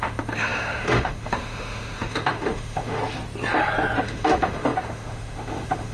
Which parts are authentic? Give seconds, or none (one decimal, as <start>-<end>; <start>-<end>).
3.0-4.0